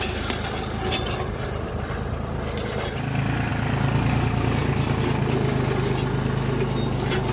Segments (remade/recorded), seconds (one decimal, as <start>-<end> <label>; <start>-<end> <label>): 0.0-7.3 recorded